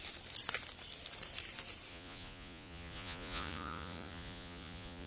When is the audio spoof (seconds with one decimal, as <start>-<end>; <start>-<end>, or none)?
1.9-5.1

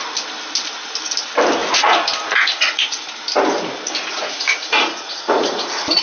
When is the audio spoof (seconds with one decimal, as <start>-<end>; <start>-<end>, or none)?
1.6-3.1; 4.1-6.0

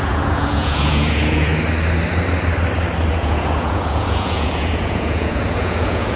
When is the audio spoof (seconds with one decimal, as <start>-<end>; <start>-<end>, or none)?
0.0-1.5; 3.1-6.2